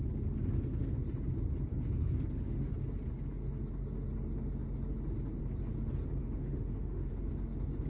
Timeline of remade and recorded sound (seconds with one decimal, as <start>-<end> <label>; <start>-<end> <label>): 0.0-1.7 recorded; 1.7-2.7 remade; 2.7-6.2 recorded; 6.2-7.1 remade; 7.1-7.9 recorded